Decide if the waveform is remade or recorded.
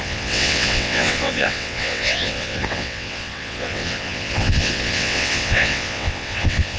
remade